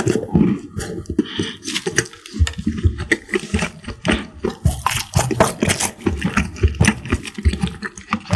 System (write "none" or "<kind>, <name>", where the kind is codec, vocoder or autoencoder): none